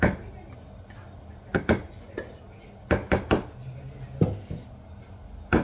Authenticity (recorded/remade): recorded